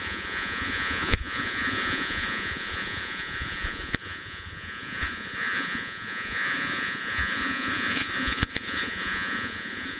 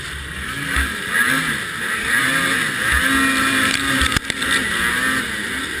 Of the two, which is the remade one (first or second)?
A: first